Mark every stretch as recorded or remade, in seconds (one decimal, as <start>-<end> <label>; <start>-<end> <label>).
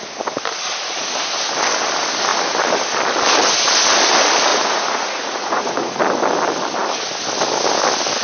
0.0-4.5 recorded; 4.5-6.0 remade; 6.0-8.2 recorded